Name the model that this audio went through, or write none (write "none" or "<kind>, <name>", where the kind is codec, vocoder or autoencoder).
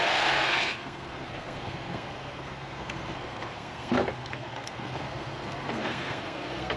codec, SNAC